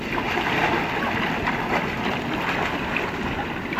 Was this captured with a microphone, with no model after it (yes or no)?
yes